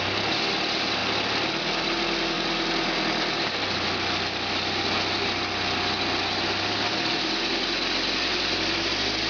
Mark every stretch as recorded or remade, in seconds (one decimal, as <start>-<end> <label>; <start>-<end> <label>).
0.0-9.3 recorded

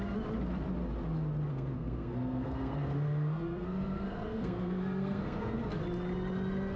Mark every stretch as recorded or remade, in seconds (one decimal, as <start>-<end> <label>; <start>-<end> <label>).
0.0-1.5 recorded; 1.5-5.6 remade; 5.6-6.8 recorded

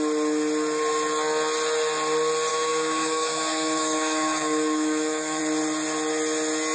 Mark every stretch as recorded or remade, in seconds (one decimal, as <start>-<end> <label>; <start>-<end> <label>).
0.0-2.5 recorded; 2.5-5.4 remade; 5.4-6.7 recorded